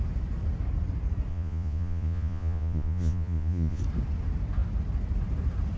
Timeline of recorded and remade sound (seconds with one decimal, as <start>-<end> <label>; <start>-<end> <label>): 0.0-1.3 recorded; 1.3-3.8 remade; 3.8-5.8 recorded